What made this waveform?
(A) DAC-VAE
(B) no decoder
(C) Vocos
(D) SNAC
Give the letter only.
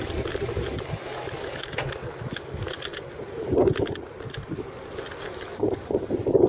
B